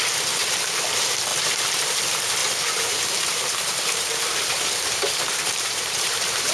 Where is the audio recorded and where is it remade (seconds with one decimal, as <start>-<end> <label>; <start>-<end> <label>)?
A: 0.0-2.4 recorded; 2.4-6.5 remade